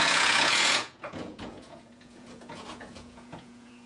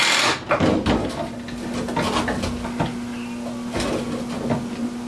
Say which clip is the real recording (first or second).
second